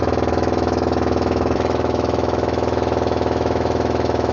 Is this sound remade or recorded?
remade